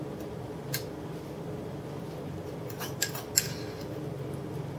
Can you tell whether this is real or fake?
real